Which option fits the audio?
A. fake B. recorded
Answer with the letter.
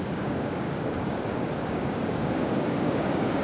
A